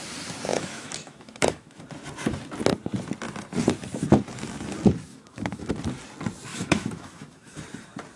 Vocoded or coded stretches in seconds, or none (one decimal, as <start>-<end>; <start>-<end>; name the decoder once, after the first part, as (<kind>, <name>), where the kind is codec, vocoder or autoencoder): 0.5-1.8 (autoencoder, DAC-VAE); 5.1-5.7; 6.5-7.6